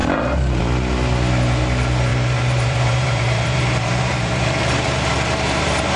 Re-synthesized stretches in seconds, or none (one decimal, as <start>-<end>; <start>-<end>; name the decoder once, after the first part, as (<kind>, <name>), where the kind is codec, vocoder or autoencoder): 2.1-6.0 (vocoder, BigVGAN v2)